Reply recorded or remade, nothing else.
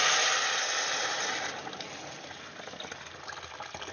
recorded